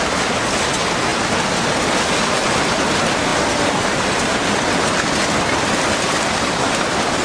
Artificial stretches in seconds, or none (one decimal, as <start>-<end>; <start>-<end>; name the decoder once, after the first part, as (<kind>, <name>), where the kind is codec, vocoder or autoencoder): none